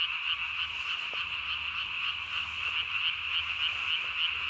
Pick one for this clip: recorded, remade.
recorded